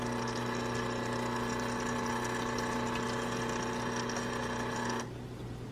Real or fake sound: real